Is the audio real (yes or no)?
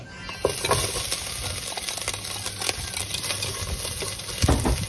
yes